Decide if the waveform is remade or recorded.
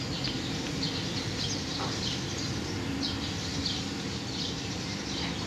recorded